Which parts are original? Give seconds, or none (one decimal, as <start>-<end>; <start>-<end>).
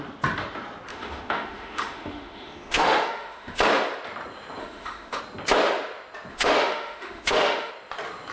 0.0-0.9; 3.6-4.6; 5.2-6.3; 7.7-8.3